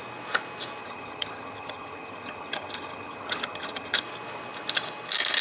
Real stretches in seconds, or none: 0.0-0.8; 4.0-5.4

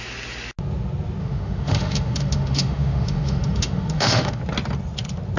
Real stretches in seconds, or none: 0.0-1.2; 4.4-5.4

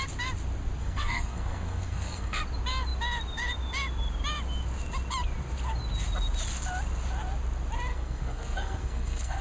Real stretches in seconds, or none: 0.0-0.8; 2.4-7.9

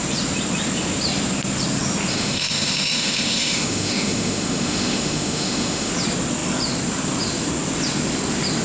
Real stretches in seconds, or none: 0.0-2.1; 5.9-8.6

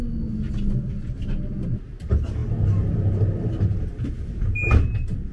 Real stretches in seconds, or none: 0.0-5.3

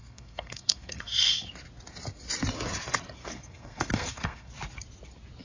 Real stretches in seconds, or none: 1.3-3.2; 4.5-5.4

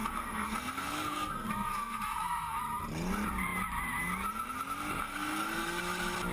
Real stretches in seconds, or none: 2.6-5.0; 5.8-6.3